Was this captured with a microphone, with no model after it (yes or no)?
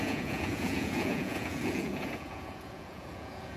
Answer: no